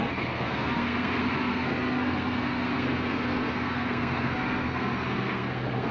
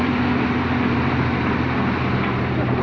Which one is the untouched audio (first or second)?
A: second